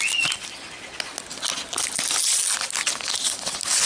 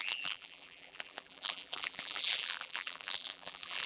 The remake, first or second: second